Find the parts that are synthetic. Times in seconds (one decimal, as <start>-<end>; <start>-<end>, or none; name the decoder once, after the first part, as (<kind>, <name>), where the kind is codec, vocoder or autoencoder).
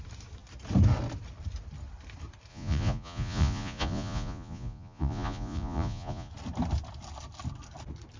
2.5-6.3 (vocoder, Vocos)